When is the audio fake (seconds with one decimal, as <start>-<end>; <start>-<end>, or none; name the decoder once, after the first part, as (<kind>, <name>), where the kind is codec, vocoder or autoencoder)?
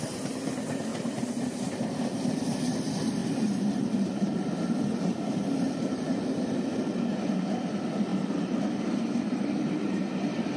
0.9-1.7 (vocoder, BigVGAN v2); 3.2-6.8; 8.1-10.6